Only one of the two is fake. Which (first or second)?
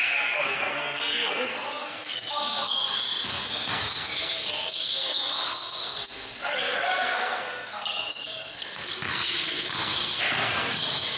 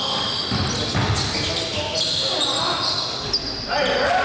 first